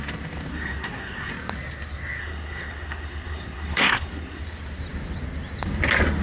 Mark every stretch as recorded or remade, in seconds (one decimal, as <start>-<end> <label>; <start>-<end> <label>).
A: 0.0-0.5 recorded; 0.5-1.3 remade; 1.3-2.2 recorded; 2.2-4.4 remade; 4.4-6.2 recorded